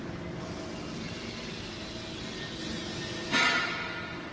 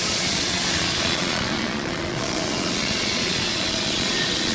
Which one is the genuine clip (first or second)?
first